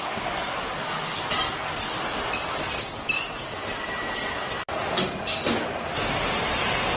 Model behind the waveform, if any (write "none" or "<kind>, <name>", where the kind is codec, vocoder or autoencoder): none